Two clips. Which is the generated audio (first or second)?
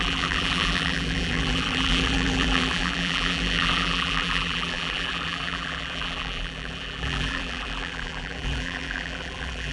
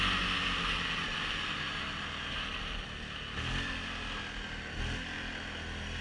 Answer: first